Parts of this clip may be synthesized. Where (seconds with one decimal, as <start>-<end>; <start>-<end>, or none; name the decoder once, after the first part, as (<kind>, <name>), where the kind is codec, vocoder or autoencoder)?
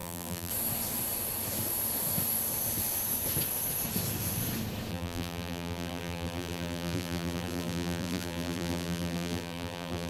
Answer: 0.0-0.5 (vocoder, BigVGAN v2); 4.9-10.1